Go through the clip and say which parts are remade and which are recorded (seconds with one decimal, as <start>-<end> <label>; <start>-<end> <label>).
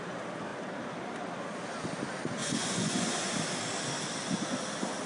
0.0-2.4 recorded; 2.4-3.3 remade; 3.3-5.1 recorded